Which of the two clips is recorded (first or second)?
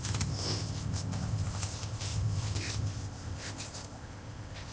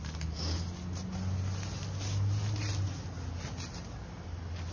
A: second